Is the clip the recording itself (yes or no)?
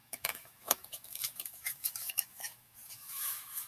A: no